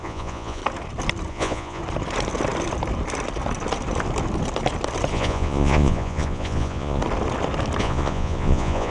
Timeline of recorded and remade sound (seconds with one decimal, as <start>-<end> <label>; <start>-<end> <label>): 0.0-0.6 remade; 0.6-1.3 recorded; 1.3-1.8 remade; 1.8-5.1 recorded; 5.1-7.0 remade; 7.0-7.8 recorded; 7.8-8.9 remade